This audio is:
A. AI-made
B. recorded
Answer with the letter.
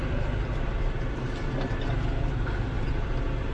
A